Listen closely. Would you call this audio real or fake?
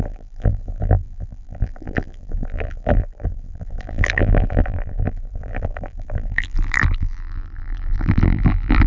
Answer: fake